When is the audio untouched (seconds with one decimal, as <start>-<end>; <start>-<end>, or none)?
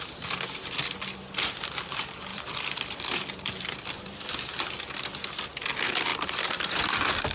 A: 0.0-2.3; 4.5-7.3